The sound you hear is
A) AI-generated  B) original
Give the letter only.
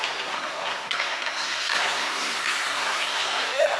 A